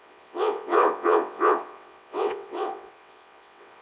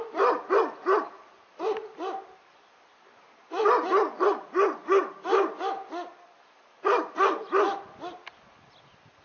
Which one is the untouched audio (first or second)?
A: second